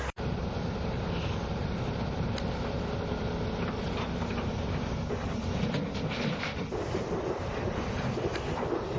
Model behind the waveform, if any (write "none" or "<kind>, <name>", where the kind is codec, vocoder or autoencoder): none